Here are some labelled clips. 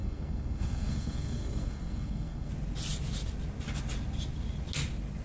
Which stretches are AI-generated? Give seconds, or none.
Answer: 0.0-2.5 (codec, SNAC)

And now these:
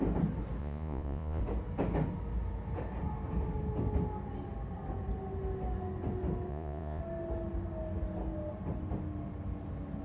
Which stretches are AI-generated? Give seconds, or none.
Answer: 0.6-1.4 (vocoder, Vocos); 6.5-7.0

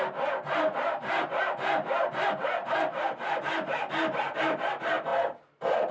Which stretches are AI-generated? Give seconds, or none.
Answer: none

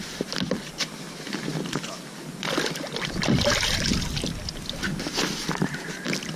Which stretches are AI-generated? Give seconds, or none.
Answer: none

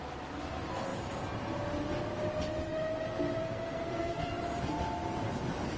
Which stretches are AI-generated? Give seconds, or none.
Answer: 3.4-4.3 (codec, SNAC)

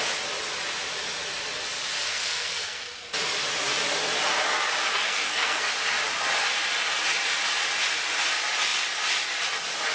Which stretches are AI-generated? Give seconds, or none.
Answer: 2.1-3.1 (codec, SNAC); 4.9-5.7

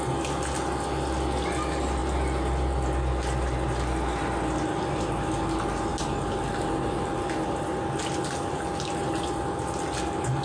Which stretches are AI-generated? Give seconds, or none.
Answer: none

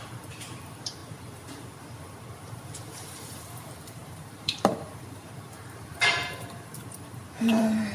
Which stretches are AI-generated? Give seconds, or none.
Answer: 0.0-7.9 (vocoder, BigVGAN v2)